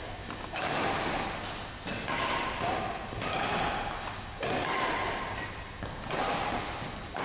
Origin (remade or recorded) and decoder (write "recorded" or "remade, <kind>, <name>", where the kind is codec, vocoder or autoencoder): recorded